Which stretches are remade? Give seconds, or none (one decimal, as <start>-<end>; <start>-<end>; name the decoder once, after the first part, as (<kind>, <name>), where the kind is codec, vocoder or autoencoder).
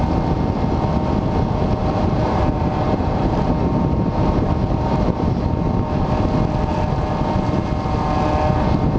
1.8-5.4 (vocoder, BigVGAN v2)